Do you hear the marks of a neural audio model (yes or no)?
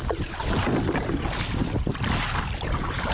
no